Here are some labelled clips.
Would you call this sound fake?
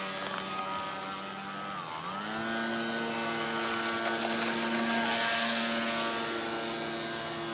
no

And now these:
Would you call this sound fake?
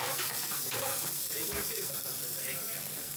yes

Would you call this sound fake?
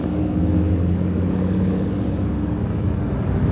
yes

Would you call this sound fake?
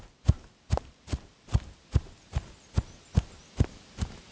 no